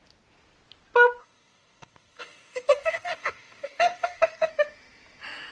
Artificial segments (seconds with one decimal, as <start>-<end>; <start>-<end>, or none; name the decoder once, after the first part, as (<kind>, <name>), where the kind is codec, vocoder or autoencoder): 1.2-4.5 (codec, DAC)